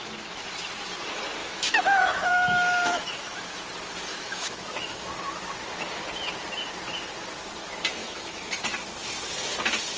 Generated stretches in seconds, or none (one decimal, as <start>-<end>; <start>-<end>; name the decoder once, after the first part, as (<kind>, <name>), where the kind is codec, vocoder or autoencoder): 1.4-3.6 (autoencoder, DAC-VAE); 4.1-5.1; 8.0-8.5

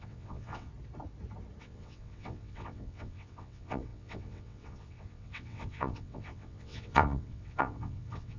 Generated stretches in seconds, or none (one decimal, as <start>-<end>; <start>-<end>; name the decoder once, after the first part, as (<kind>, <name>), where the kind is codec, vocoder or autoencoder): 0.0-0.7 (vocoder, WaveNeXt); 1.6-8.4

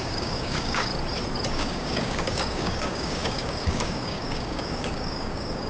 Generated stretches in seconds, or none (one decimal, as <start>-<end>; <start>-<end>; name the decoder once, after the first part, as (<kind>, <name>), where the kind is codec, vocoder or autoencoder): 0.0-0.9 (codec, DAC); 1.5-5.7